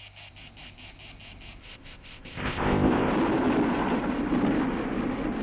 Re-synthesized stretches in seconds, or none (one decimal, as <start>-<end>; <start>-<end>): 1.6-3.1